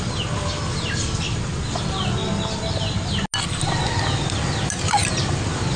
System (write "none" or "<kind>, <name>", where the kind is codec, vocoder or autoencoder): none